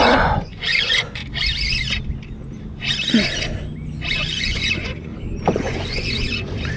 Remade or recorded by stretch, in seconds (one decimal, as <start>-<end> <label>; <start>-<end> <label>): 0.0-1.2 remade; 1.2-4.1 recorded; 4.1-5.1 remade; 5.1-5.6 recorded; 5.6-6.8 remade